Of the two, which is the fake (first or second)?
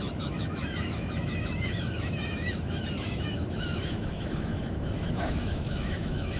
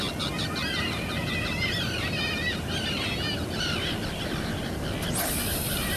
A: first